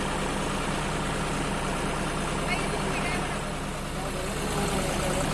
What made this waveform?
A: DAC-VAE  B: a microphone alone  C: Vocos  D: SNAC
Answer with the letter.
B